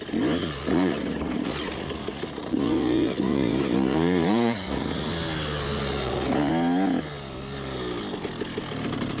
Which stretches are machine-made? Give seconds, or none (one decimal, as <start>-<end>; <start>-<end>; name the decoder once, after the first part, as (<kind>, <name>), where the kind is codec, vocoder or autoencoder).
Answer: 0.4-5.1 (vocoder, Vocos); 5.7-6.5